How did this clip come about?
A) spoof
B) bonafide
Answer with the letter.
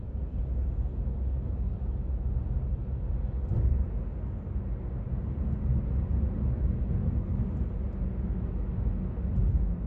B